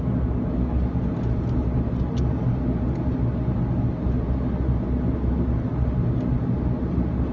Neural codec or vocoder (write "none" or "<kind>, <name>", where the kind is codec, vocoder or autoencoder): none